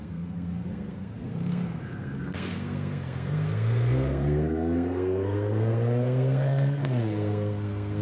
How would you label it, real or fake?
fake